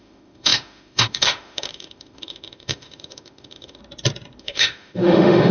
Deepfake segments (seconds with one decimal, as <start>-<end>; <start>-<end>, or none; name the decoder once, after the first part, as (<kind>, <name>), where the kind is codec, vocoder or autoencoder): 0.0-3.8 (autoencoder, DAC-VAE); 4.4-5.5